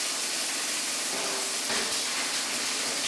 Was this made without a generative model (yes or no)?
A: yes